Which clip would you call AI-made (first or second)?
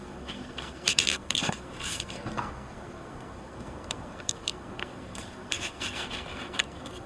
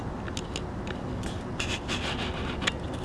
first